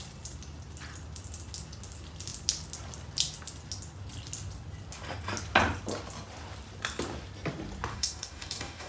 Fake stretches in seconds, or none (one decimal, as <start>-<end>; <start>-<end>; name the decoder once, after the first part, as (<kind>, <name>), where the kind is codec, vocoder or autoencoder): 7.9-8.9 (codec, DAC)

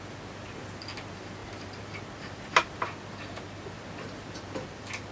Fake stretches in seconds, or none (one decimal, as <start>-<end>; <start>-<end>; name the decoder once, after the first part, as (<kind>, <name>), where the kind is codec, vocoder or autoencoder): none

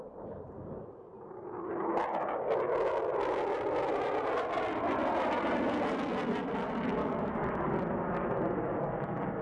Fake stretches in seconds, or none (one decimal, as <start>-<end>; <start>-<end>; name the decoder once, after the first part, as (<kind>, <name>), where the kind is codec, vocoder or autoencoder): 7.0-7.7 (codec, DAC)

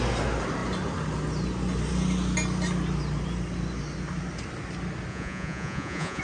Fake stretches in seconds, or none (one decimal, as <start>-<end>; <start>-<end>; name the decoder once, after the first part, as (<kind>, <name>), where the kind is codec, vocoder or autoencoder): 5.1-6.2 (vocoder, Vocos)

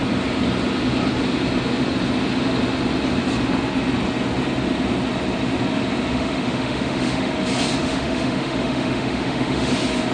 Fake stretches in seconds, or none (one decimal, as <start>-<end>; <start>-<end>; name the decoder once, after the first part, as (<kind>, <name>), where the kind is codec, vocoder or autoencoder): 6.1-7.3 (autoencoder, DAC-VAE); 7.8-9.7